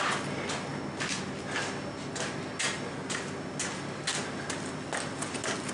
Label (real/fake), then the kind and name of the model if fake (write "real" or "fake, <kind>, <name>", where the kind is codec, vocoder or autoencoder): real